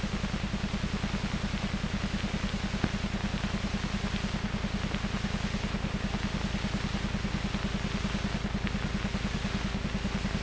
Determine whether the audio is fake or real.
real